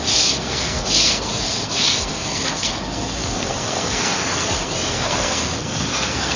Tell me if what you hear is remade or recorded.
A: remade